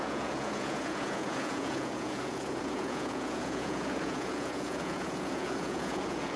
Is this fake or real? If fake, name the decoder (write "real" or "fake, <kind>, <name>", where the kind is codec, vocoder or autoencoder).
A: fake, vocoder, Vocos